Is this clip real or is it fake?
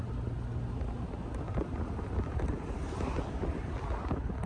real